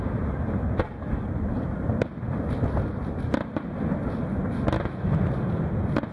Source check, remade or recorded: recorded